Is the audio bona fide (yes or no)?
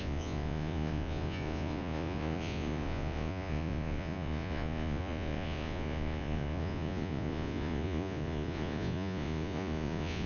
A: no